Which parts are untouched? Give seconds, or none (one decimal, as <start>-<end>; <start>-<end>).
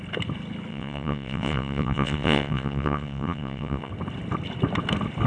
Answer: 0.0-0.7; 3.9-5.3